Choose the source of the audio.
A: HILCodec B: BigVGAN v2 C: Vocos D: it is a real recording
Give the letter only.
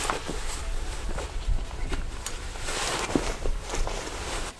D